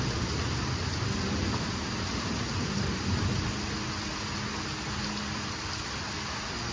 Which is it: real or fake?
real